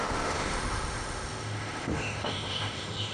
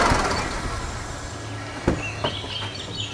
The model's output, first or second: first